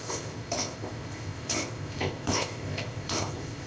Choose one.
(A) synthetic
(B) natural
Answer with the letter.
A